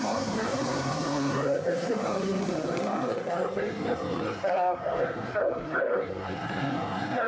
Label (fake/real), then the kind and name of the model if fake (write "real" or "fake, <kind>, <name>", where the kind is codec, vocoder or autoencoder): fake, codec, SNAC